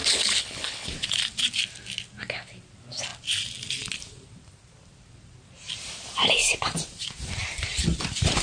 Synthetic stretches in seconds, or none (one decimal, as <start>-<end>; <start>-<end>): 0.0-0.9